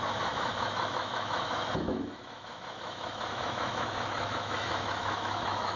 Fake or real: fake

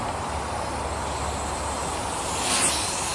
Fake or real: real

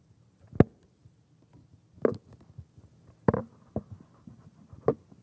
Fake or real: real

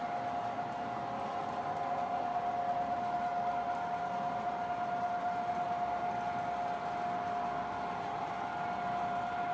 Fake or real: real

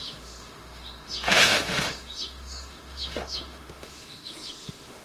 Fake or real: fake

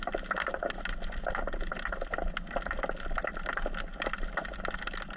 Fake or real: real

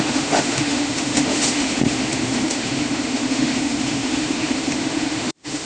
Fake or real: fake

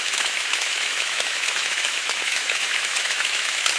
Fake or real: fake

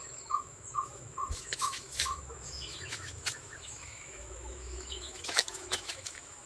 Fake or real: fake